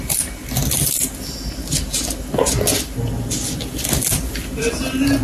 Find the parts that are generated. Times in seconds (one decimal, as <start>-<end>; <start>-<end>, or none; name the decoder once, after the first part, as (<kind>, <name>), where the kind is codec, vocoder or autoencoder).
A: none

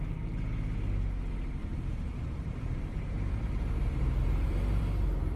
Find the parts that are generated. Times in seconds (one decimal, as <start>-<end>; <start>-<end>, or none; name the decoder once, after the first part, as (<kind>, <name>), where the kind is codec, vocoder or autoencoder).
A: 1.6-4.8 (vocoder, BigVGAN v2)

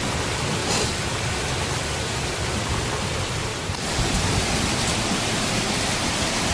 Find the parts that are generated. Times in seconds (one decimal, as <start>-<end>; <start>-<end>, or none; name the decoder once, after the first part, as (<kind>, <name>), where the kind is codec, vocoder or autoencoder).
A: 0.0-6.5 (vocoder, BigVGAN v2)

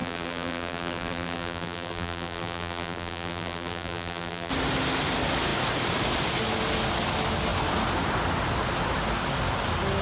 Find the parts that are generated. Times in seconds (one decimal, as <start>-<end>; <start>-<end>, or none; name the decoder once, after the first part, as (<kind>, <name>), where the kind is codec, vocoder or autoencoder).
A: 0.0-4.5 (vocoder, BigVGAN v2)

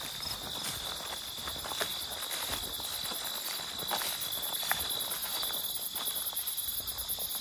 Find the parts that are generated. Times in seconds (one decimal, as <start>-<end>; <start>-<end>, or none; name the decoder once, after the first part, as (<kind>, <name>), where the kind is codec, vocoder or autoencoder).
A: none

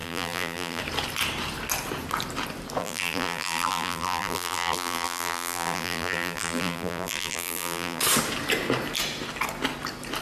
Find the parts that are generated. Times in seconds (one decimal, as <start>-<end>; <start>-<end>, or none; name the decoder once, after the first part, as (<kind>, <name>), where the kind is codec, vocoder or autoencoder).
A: 0.0-0.8 (vocoder, BigVGAN v2); 2.8-8.0

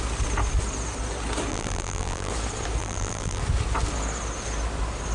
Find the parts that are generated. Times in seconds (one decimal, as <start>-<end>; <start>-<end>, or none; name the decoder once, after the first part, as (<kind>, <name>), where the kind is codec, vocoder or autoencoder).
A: 1.5-2.3 (vocoder, BigVGAN v2); 2.8-3.4